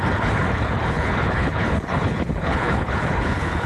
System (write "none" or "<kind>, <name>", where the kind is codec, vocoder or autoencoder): codec, HILCodec